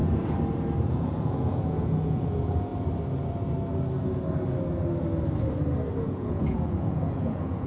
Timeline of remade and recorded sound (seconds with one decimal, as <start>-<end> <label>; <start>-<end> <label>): 0.0-0.8 recorded; 0.8-2.7 remade; 2.7-6.0 recorded; 6.0-7.7 remade